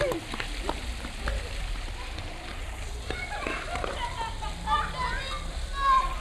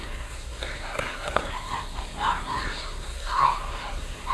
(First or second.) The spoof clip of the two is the second